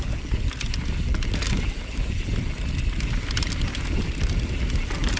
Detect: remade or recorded recorded